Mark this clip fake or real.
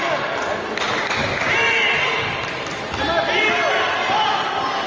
real